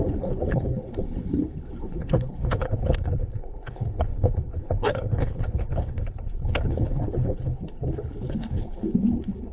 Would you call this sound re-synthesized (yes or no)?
yes